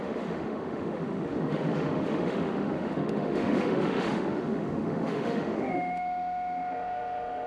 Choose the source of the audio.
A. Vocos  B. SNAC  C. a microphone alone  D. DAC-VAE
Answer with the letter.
D